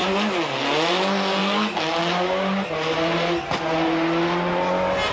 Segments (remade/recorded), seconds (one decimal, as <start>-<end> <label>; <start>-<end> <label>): 0.0-5.1 recorded